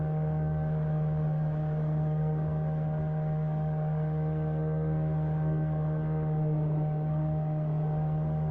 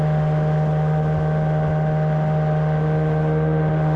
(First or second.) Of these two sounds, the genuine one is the second